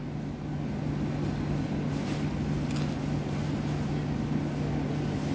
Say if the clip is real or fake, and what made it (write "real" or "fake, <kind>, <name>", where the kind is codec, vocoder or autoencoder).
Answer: real